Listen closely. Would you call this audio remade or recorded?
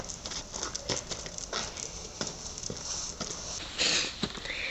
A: recorded